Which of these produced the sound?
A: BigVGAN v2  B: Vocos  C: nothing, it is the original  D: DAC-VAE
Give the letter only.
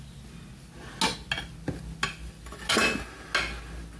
C